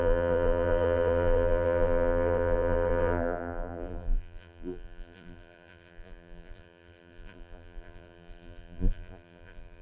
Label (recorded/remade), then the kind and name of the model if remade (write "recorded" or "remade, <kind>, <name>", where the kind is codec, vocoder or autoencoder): remade, vocoder, BigVGAN v2